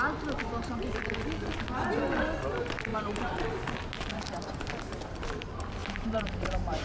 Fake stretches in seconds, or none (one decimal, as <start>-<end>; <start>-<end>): 5.8-6.8